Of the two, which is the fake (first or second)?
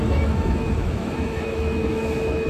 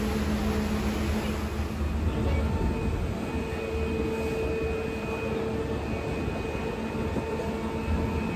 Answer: first